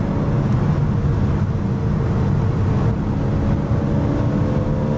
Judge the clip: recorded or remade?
recorded